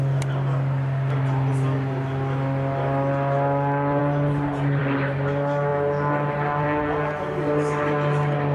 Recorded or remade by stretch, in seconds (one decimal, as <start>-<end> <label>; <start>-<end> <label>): 0.0-8.5 recorded